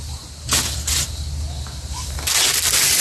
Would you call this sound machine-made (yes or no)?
no